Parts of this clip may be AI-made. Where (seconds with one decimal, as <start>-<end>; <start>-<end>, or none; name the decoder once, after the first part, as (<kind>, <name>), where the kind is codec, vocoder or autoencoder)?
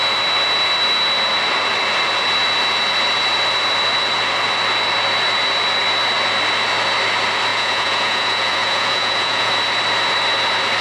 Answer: 7.5-9.5 (vocoder, Vocos)